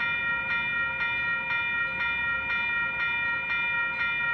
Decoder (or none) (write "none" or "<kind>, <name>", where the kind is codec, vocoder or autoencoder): none